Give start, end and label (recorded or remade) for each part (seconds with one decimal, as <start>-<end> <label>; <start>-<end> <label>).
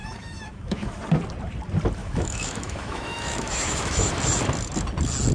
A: 0.0-1.0 remade; 1.0-2.0 recorded; 2.0-4.1 remade; 4.1-5.3 recorded